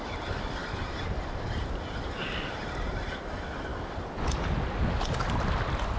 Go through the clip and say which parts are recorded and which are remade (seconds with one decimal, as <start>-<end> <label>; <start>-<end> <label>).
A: 0.0-6.0 recorded